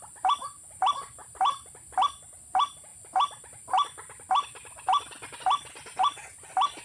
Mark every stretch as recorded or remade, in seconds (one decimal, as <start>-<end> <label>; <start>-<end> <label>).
0.0-1.2 recorded; 1.2-1.9 remade; 1.9-6.8 recorded